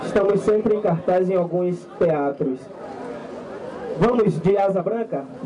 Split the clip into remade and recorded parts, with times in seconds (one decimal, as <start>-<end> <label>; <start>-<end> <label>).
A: 0.0-3.2 recorded; 3.2-4.8 remade; 4.8-5.5 recorded